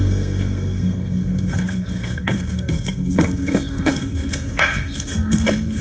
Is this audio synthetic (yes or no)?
yes